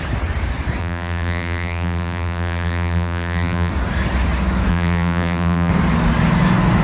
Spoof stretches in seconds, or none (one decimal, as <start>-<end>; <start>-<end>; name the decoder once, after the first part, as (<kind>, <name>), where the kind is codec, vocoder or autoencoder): 0.8-3.7 (vocoder, BigVGAN v2); 4.7-5.7